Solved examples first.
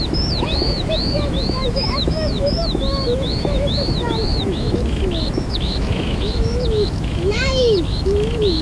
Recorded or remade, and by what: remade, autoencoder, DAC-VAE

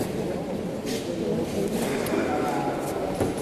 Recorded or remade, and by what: recorded